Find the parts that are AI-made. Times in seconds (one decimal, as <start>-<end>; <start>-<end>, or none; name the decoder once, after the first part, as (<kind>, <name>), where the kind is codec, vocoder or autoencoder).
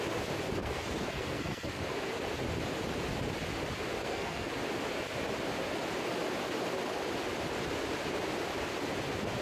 0.6-1.8 (codec, SNAC); 4.0-4.5